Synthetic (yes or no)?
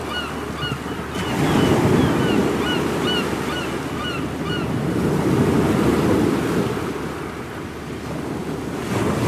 no